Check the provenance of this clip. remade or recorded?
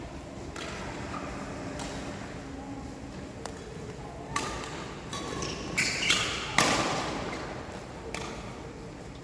recorded